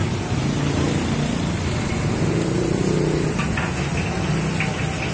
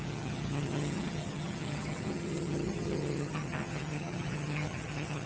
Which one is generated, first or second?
second